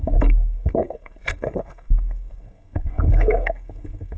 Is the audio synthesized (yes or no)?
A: yes